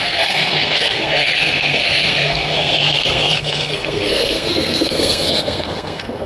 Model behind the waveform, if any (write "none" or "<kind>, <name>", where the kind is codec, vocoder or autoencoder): codec, SNAC